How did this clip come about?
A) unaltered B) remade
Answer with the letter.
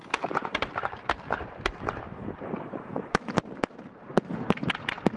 B